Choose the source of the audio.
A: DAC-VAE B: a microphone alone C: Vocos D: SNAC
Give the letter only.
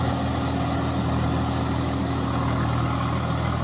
B